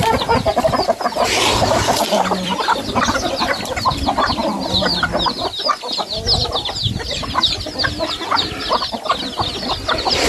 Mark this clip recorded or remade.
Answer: recorded